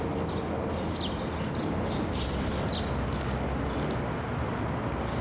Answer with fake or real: real